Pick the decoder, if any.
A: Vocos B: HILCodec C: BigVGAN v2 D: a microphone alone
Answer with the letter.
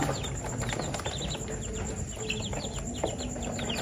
D